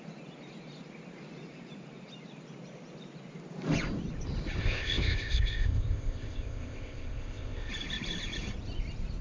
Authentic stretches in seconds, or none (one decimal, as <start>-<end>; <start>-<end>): 0.0-4.6; 7.7-9.2